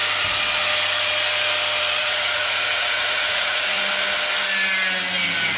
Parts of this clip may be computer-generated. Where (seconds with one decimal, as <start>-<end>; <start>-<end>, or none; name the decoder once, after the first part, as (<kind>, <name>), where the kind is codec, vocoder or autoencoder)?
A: 2.0-3.8 (vocoder, Vocos)